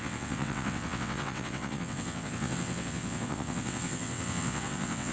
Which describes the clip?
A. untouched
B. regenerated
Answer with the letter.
B